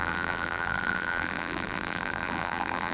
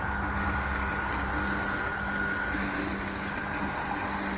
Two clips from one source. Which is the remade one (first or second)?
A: first